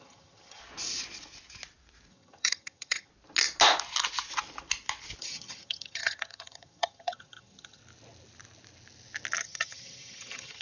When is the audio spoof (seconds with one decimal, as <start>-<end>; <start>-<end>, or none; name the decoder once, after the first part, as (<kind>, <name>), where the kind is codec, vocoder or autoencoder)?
0.0-0.6 (vocoder, HiFi-GAN); 2.1-3.1; 5.2-7.8; 9.4-10.6